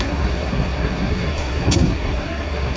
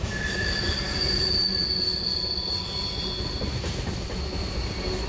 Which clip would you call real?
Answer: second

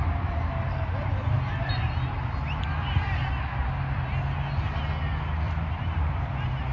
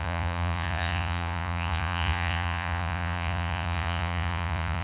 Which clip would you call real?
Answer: first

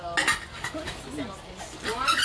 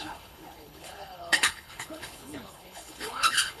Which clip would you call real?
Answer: first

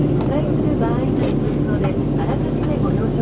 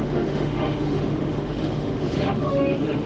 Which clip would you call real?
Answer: first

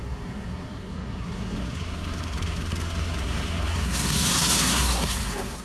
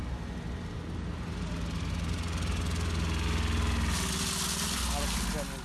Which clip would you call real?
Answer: second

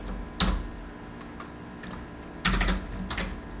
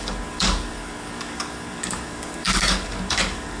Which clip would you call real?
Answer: first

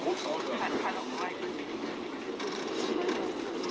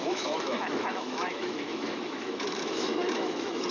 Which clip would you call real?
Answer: first